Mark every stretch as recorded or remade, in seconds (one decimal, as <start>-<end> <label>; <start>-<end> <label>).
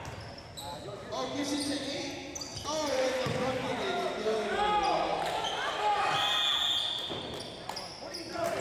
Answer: 0.0-8.6 recorded